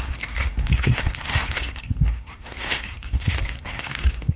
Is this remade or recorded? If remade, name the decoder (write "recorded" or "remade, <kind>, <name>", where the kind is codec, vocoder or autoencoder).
remade, codec, SNAC